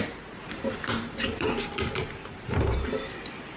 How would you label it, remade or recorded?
remade